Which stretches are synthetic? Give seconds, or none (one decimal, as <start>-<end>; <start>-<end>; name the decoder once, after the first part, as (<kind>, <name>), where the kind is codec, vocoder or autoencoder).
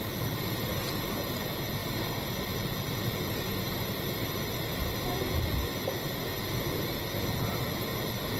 none